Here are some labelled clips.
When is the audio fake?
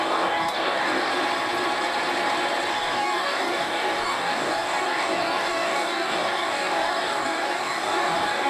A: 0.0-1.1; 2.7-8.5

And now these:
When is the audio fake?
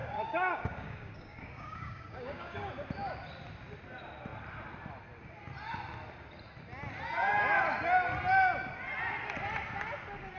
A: 0.0-2.7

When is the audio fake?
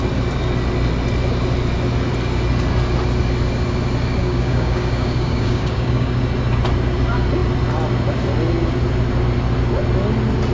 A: 4.2-6.2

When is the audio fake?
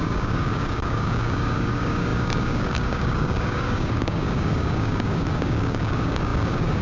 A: 0.0-6.8